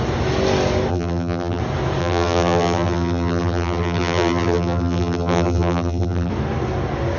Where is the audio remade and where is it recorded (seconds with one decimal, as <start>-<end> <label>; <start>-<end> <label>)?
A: 0.0-0.9 recorded; 0.9-1.6 remade; 1.6-2.0 recorded; 2.0-6.3 remade; 6.3-7.2 recorded